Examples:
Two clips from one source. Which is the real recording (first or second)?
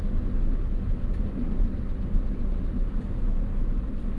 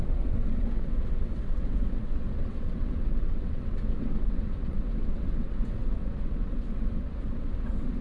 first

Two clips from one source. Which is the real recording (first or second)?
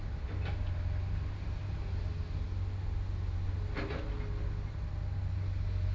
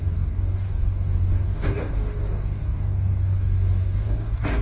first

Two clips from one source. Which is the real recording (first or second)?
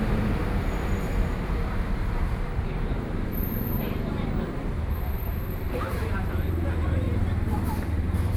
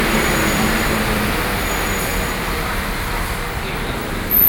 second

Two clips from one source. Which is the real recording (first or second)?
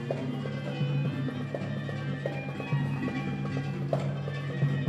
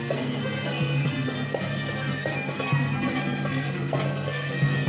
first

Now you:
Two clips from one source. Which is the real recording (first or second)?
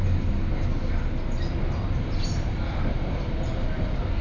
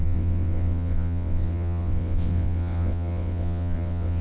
first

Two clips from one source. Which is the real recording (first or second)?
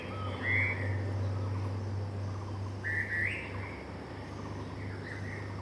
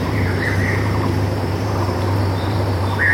first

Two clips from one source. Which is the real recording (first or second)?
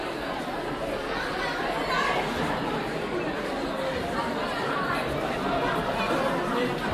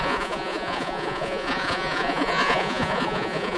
first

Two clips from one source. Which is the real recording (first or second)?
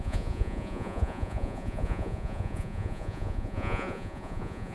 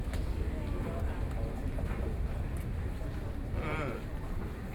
second